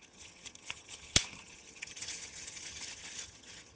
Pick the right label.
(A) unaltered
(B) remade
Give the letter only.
B